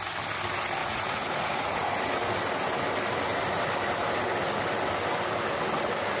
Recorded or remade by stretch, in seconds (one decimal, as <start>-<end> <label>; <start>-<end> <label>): 0.0-0.8 recorded; 0.8-2.0 remade; 2.0-6.2 recorded

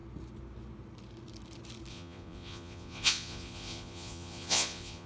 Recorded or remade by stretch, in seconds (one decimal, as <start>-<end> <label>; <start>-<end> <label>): 0.0-1.9 recorded; 1.9-5.1 remade

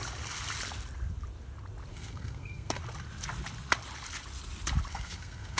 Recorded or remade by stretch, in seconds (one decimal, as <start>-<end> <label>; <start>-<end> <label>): 0.0-1.9 recorded; 1.9-2.8 remade; 2.8-4.9 recorded; 4.9-5.6 remade

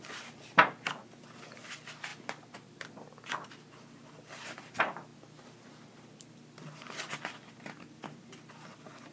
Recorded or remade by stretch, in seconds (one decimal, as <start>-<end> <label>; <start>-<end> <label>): 0.0-0.6 remade; 0.6-1.1 recorded; 1.1-2.1 remade; 2.1-4.1 recorded; 4.1-5.1 remade; 5.1-6.0 recorded; 6.0-9.1 remade

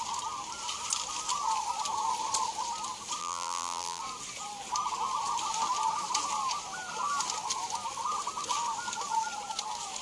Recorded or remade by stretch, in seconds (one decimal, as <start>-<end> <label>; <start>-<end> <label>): 0.0-3.2 recorded; 3.2-4.0 remade; 4.0-10.0 recorded

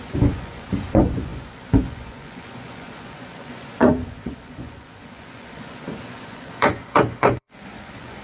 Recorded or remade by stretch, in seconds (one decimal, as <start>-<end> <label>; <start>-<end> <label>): 0.0-8.2 remade

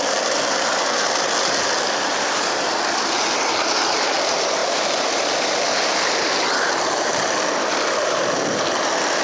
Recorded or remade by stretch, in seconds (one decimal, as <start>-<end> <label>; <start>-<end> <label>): 0.0-9.2 recorded